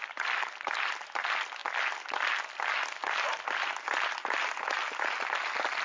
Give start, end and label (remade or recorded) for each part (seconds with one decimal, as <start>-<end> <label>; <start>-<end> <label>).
0.0-5.8 recorded